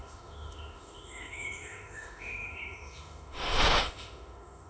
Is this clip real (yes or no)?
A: no